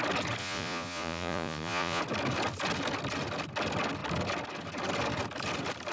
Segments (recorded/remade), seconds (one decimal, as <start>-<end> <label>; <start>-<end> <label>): 0.0-0.4 recorded; 0.4-2.0 remade; 2.0-5.9 recorded